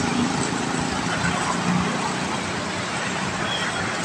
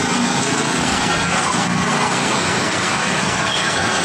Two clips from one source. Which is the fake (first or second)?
second